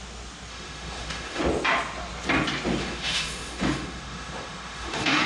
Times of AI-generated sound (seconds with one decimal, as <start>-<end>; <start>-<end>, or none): 0.5-1.4; 2.8-5.3